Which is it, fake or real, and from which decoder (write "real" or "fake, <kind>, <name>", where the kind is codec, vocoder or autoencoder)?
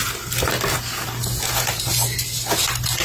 real